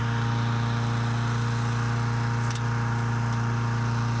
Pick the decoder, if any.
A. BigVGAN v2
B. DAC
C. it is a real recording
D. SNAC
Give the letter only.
C